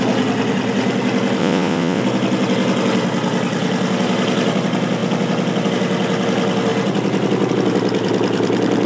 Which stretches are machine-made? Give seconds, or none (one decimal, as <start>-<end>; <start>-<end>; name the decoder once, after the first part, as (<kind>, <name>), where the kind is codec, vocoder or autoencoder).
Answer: 1.4-2.0 (vocoder, Vocos)